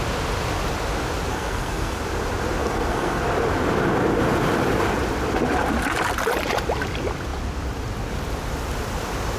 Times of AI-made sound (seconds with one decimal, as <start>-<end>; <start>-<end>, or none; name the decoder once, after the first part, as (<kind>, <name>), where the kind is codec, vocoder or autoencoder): 1.3-2.0 (codec, SNAC); 2.6-3.2